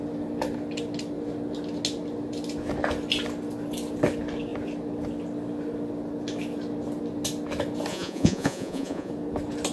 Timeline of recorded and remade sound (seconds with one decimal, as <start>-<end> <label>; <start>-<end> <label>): 0.0-7.9 recorded; 7.9-9.1 remade; 9.1-9.7 recorded